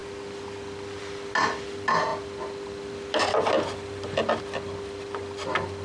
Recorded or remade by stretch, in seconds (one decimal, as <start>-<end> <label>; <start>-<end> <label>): 0.0-5.8 recorded